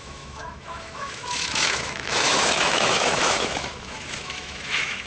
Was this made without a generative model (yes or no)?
no